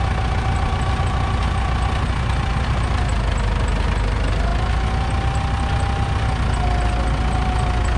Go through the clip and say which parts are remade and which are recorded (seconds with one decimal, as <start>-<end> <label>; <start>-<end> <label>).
0.0-8.0 recorded